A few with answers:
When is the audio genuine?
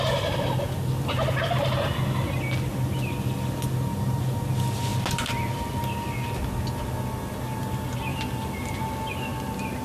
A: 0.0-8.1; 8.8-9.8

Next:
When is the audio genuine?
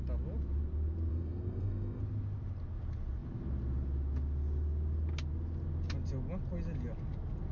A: 0.0-1.1; 2.0-7.5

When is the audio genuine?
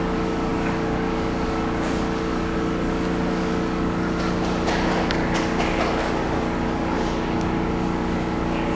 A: none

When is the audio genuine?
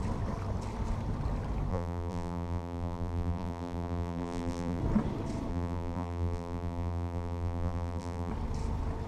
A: 0.0-1.7; 4.8-5.5; 8.3-9.1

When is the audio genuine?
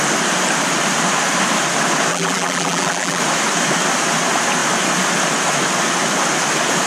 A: 0.0-2.1; 3.2-6.9